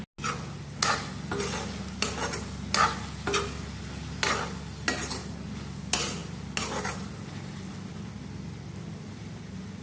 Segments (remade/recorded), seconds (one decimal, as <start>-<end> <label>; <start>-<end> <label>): 0.0-9.8 recorded